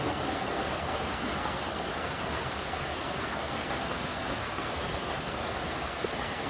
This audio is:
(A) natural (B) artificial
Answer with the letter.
B